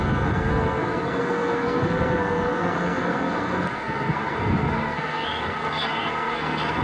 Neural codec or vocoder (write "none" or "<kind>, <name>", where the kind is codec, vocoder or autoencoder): codec, SNAC